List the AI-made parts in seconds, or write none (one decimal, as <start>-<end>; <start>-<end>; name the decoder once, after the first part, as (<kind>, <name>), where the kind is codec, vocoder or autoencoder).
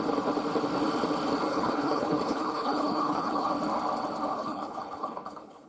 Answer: 1.5-3.5 (codec, HILCodec); 4.3-5.7